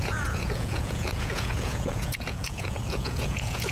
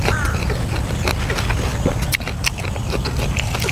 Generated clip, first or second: first